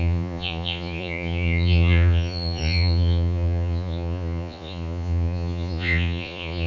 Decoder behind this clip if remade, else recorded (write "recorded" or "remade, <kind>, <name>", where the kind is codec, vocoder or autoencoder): remade, vocoder, Vocos